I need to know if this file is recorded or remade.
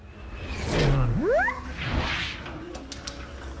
recorded